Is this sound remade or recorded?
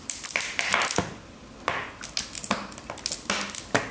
recorded